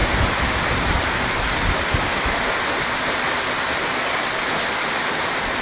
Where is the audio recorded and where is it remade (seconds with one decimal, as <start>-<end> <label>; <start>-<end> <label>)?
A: 0.0-5.6 recorded